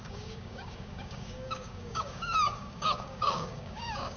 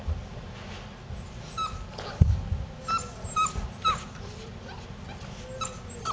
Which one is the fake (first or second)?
first